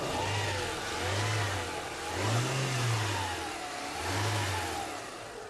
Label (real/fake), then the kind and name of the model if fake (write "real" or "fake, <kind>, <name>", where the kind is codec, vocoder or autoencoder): real